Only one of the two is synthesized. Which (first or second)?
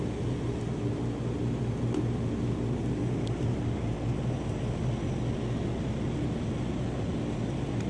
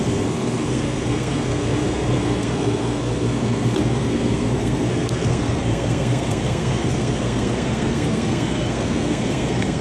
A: second